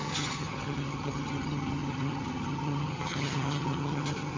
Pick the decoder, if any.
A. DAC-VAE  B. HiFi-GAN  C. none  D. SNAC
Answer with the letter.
B